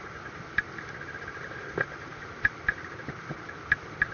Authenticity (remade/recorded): recorded